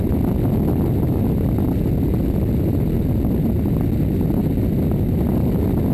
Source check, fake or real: real